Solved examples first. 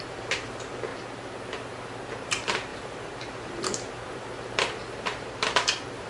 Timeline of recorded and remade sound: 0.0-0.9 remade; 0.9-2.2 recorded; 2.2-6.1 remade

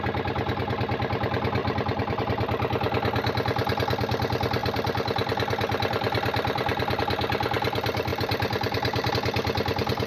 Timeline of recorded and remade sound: 0.0-1.6 recorded; 1.6-2.2 remade; 2.2-4.6 recorded; 4.6-7.0 remade; 7.0-8.1 recorded; 8.1-9.1 remade; 9.1-10.1 recorded

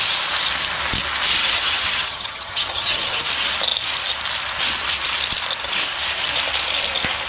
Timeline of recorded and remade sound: 0.0-1.4 recorded; 1.4-3.2 remade; 3.2-7.3 recorded

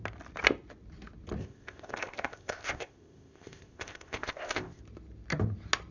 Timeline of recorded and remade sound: 0.0-1.4 recorded; 1.4-4.8 remade; 4.8-5.9 recorded

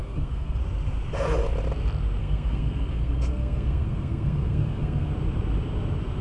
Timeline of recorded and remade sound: 0.0-0.6 remade; 0.6-2.2 recorded; 2.2-5.1 remade; 5.1-6.2 recorded

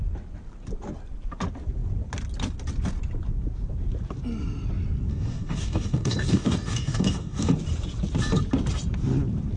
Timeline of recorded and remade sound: 0.0-5.1 recorded; 5.1-7.5 remade; 7.5-9.6 recorded

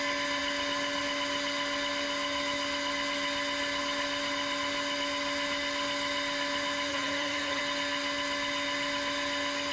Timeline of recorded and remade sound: 0.0-6.9 recorded; 6.9-7.6 remade; 7.6-9.7 recorded

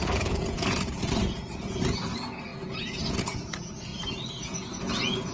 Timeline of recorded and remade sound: 0.0-3.9 remade; 3.9-4.4 recorded; 4.4-5.3 remade